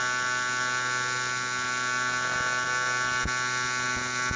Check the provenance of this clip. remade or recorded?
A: recorded